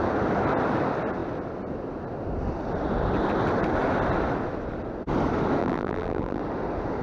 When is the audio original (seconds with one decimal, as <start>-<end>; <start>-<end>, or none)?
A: 0.0-5.6; 6.4-7.0